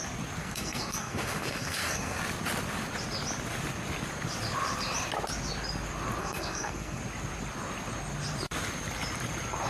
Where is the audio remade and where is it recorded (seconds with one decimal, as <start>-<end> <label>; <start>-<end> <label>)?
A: 0.0-0.4 recorded; 0.4-2.2 remade; 2.2-6.2 recorded; 6.2-7.0 remade; 7.0-9.7 recorded